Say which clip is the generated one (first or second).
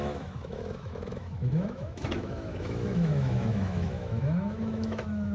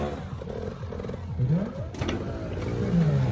first